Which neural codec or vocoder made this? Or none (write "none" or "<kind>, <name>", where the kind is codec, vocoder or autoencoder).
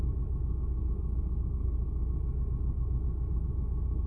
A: none